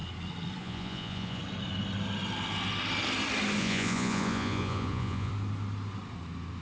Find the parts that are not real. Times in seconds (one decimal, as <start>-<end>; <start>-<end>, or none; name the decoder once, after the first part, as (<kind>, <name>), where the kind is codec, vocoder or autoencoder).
0.6-1.4 (vocoder, Vocos); 3.6-5.3